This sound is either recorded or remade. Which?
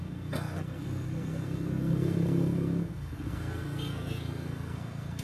remade